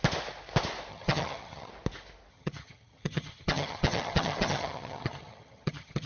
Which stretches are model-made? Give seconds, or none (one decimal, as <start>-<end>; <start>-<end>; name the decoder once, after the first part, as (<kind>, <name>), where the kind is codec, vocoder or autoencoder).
0.9-1.7 (vocoder, HiFi-GAN); 2.3-6.1

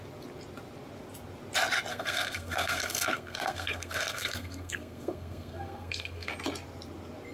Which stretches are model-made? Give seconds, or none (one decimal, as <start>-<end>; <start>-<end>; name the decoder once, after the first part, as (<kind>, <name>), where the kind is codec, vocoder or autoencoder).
1.9-6.3 (codec, SNAC)

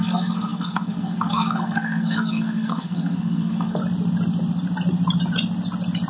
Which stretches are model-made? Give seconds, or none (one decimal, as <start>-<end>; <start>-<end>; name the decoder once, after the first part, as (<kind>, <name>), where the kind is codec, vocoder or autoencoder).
0.0-3.8 (codec, SNAC)

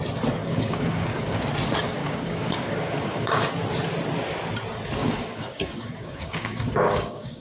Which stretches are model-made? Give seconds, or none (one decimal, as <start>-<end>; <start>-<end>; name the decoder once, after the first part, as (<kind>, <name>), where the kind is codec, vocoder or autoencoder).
0.4-1.4 (codec, DAC); 2.0-3.5; 5.0-7.4

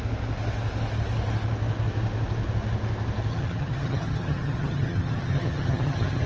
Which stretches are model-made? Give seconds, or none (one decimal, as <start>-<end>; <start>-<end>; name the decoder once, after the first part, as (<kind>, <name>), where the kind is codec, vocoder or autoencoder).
3.3-6.3 (vocoder, HiFi-GAN)

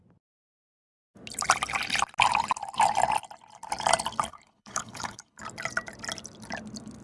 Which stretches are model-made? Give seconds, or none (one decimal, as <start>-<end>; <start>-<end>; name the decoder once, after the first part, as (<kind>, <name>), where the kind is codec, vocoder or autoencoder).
4.3-5.4 (codec, HILCodec)

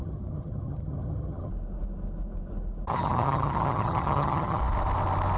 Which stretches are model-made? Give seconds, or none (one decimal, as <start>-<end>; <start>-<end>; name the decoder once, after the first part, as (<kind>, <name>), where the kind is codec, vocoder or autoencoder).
0.0-1.5 (vocoder, HiFi-GAN); 2.9-4.6